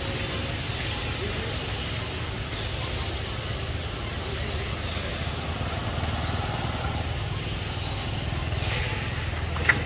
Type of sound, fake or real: real